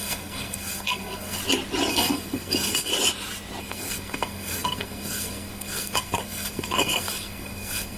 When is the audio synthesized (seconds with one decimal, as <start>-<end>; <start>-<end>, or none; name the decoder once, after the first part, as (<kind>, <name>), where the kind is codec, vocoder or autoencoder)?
0.0-1.4 (codec, SNAC); 1.9-2.9; 3.6-8.0

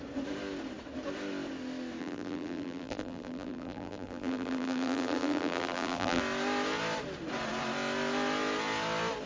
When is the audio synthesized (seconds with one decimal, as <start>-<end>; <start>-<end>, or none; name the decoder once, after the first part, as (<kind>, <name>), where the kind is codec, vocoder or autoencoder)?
2.0-6.2 (vocoder, BigVGAN v2)

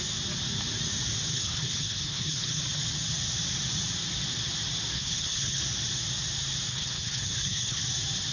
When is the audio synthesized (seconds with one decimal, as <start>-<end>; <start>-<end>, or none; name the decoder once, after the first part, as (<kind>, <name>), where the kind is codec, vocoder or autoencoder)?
1.3-2.6 (codec, HILCodec); 4.9-5.6; 6.7-7.8

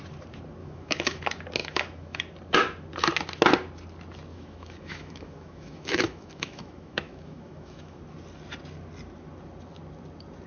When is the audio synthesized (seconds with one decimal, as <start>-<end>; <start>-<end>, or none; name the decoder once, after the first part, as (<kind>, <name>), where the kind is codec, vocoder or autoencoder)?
0.6-1.2 (autoencoder, DAC-VAE); 1.6-2.2; 4.3-8.0

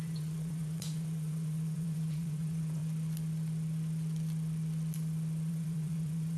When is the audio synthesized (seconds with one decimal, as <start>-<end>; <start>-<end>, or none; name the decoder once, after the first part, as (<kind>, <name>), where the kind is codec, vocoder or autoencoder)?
0.0-2.8 (vocoder, Vocos); 5.5-6.4

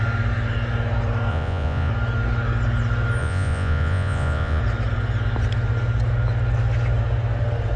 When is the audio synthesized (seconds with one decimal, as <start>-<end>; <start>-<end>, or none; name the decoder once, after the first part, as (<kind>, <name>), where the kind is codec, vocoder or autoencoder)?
1.3-1.9 (vocoder, Vocos); 3.2-4.6

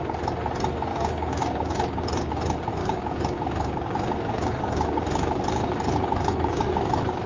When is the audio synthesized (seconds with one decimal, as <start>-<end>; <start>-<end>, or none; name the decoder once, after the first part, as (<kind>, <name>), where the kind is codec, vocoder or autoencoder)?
0.9-2.3 (codec, DAC); 2.8-7.3